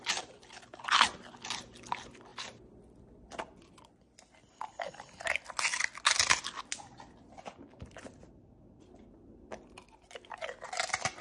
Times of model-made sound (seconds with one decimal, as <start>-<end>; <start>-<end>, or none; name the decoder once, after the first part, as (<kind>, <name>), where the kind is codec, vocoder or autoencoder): none